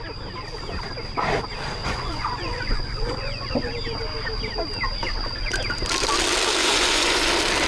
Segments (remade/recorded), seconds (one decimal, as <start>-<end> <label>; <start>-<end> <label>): 0.0-1.8 recorded; 1.8-3.7 remade; 3.7-6.6 recorded; 6.6-7.3 remade; 7.3-7.7 recorded